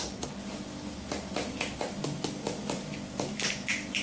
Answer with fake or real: fake